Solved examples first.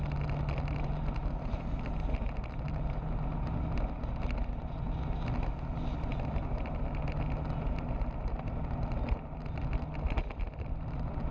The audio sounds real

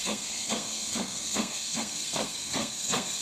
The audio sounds fake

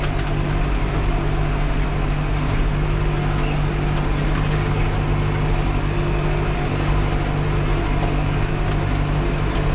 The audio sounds real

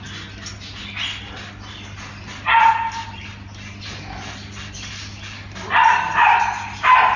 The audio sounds real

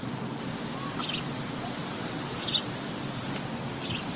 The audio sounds real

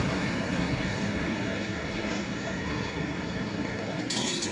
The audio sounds fake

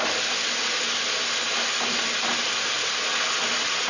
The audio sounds real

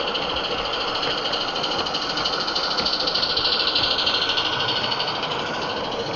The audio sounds real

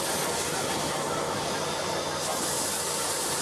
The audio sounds real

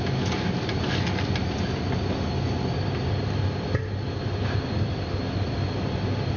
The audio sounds real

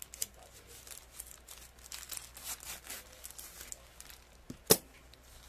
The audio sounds real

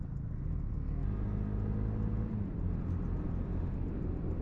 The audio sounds real